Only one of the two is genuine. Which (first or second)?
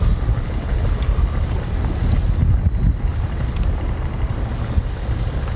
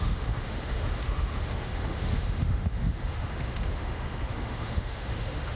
first